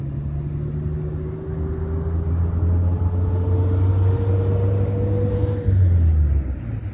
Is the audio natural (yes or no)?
yes